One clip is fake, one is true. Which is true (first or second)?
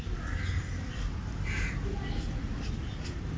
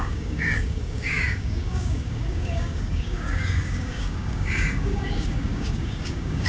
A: first